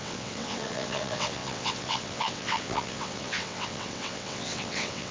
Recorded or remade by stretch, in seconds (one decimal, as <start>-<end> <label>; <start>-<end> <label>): 0.0-5.1 remade